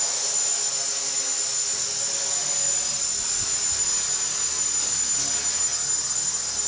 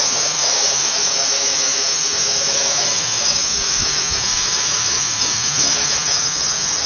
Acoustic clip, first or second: first